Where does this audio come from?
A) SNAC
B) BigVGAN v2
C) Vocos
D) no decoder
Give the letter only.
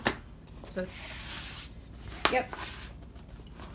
D